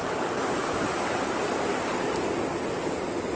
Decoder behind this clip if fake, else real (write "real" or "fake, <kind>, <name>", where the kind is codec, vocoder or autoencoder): real